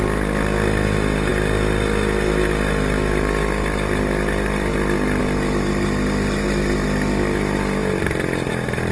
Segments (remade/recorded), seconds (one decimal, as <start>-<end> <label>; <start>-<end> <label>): 0.0-8.9 recorded